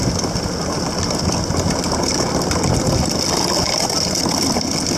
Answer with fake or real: real